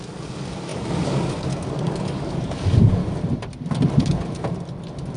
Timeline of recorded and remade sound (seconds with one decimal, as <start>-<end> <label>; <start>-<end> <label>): 0.0-3.0 remade; 3.0-5.2 recorded